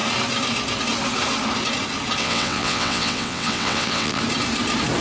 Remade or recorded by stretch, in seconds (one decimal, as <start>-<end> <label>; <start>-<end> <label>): 0.0-2.2 recorded; 2.2-4.2 remade; 4.2-5.0 recorded